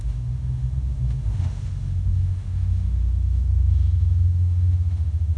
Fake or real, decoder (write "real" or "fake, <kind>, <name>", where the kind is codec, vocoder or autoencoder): fake, autoencoder, DAC-VAE